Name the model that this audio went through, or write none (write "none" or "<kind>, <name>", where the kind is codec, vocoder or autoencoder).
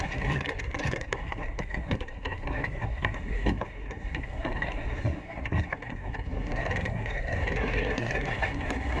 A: codec, SNAC